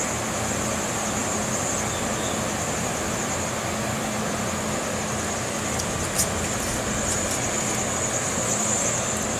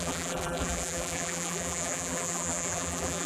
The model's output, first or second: second